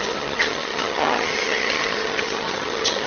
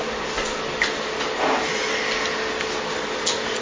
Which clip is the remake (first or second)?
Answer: first